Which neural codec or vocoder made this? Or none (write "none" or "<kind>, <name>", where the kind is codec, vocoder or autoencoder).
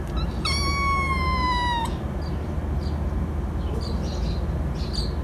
none